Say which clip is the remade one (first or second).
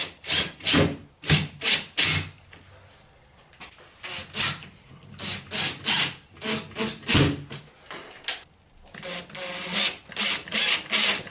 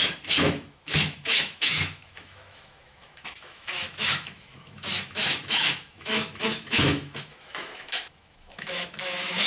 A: second